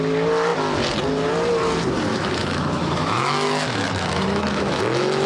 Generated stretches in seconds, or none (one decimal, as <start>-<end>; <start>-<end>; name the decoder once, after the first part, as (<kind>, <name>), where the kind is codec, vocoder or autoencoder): 2.1-5.3 (autoencoder, DAC-VAE)